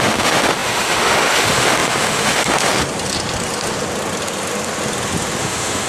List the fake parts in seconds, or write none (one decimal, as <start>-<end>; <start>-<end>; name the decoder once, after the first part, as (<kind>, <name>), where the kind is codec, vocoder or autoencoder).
0.0-2.7 (autoencoder, DAC-VAE); 5.4-5.9